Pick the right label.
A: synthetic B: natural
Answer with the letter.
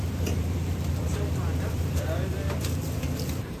A